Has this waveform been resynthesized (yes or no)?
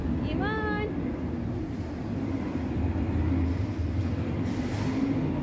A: no